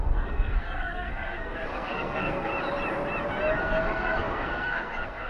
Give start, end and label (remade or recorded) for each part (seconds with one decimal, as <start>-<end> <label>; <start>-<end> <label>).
0.0-2.5 remade; 2.5-3.6 recorded; 3.6-5.3 remade